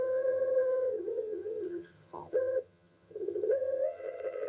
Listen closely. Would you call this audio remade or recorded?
remade